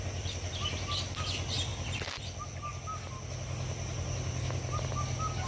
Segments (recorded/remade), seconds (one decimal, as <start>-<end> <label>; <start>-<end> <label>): 0.0-5.5 recorded